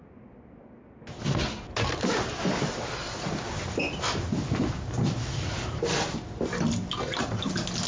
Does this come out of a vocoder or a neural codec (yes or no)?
no